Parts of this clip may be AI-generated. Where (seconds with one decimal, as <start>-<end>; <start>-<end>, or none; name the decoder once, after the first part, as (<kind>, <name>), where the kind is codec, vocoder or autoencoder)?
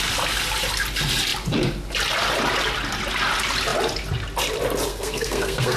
4.9-5.8 (codec, SNAC)